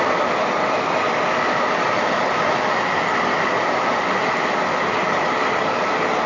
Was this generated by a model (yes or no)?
no